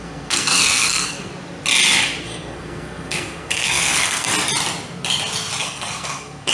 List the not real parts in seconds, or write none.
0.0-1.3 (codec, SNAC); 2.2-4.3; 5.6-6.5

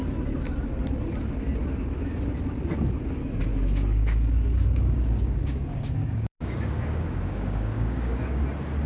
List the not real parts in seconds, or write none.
3.5-8.4 (codec, DAC)